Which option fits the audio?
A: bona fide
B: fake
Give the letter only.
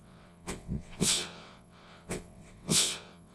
B